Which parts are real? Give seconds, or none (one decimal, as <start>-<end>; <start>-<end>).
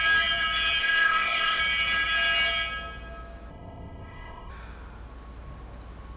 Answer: 0.0-0.8; 1.6-3.5; 4.5-6.2